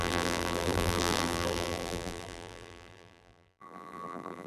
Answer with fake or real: fake